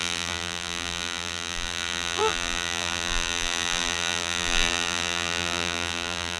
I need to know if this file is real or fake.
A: fake